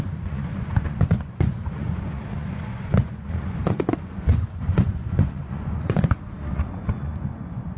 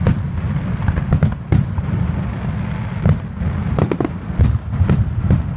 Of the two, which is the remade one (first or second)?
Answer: first